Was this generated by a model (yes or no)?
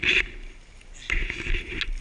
no